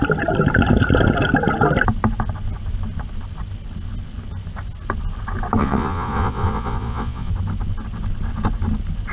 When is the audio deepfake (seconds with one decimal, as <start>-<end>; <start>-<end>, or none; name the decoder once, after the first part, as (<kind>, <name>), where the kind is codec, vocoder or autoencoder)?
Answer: 5.6-7.3 (vocoder, Vocos)